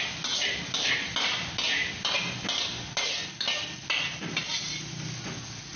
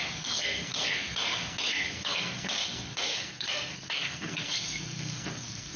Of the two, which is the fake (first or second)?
second